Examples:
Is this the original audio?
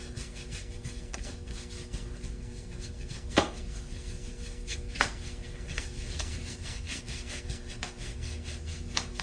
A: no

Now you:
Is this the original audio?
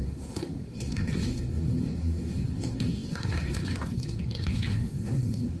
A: no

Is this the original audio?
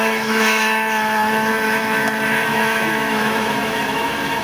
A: no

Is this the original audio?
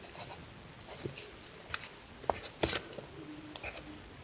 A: yes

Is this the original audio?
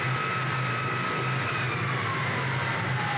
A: yes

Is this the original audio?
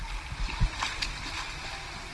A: yes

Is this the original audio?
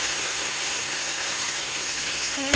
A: no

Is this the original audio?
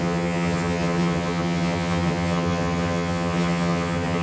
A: no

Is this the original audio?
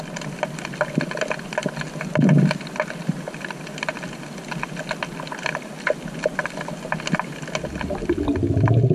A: yes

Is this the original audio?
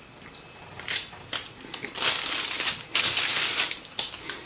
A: yes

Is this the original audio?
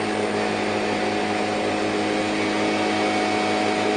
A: yes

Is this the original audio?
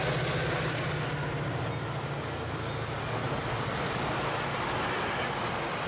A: yes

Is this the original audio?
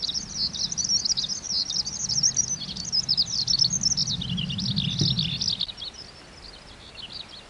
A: yes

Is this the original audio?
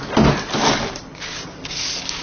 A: yes